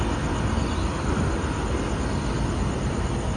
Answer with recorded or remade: recorded